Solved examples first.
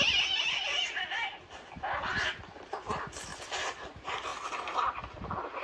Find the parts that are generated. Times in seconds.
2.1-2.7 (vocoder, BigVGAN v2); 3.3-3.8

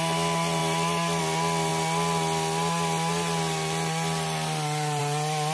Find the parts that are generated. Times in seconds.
none

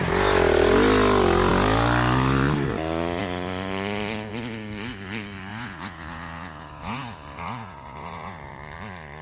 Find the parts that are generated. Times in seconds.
5.5-8.5 (vocoder, Vocos)

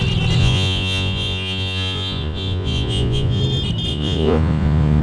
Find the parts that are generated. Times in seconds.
0.4-3.4 (vocoder, Vocos); 3.9-5.0

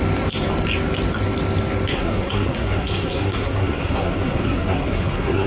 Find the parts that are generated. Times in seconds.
1.9-5.5 (codec, SNAC)

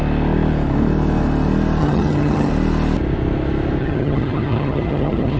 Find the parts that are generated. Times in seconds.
1.8-2.5 (vocoder, HiFi-GAN); 3.8-5.4

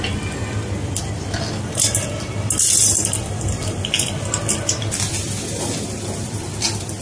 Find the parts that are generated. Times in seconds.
none

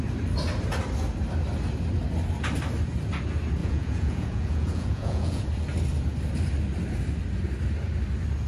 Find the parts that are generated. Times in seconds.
3.6-5.4 (vocoder, Vocos)